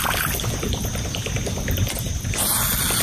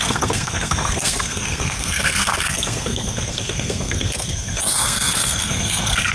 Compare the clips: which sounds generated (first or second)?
second